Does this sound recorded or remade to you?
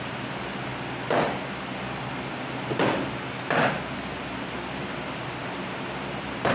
recorded